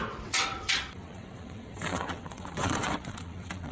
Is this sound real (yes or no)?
no